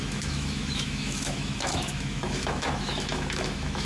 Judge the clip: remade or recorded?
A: remade